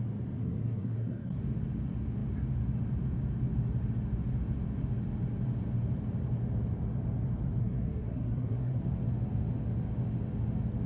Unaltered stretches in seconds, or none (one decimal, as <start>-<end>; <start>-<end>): 0.0-0.4; 1.4-7.6; 8.8-10.9